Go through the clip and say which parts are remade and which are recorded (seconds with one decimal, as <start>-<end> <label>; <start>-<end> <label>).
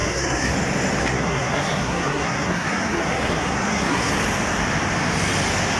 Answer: 0.0-0.5 remade; 0.5-1.0 recorded; 1.0-4.1 remade; 4.1-5.8 recorded